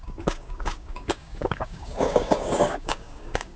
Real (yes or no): no